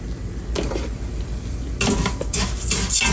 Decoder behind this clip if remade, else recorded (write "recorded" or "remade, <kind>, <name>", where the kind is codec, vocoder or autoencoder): recorded